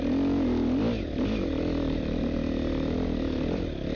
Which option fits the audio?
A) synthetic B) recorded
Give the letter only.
B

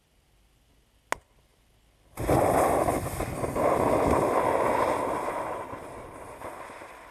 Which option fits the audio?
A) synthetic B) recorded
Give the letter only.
B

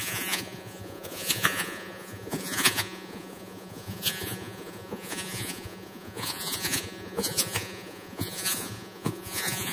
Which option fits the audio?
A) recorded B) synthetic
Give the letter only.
B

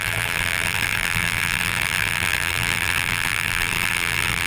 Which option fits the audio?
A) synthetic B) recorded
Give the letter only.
A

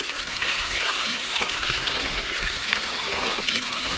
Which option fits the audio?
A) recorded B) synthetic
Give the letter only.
B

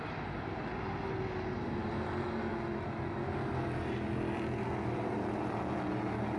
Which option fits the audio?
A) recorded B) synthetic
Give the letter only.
A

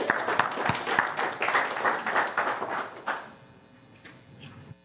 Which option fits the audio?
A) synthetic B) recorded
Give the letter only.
B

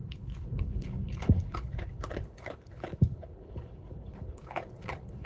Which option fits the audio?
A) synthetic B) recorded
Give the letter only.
A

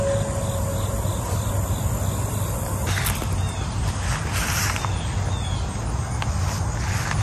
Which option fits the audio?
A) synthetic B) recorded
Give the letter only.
B